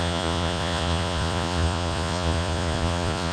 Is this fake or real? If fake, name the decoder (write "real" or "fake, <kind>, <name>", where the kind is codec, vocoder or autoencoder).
fake, vocoder, Vocos